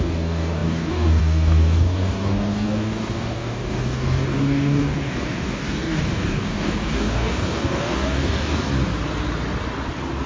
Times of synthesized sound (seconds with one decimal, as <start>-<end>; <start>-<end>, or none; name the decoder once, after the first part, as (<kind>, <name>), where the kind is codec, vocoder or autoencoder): 0.0-8.7 (codec, DAC)